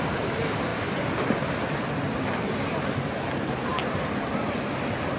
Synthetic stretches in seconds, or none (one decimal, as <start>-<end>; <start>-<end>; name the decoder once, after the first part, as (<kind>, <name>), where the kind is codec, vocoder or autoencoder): 3.7-4.5 (vocoder, BigVGAN v2)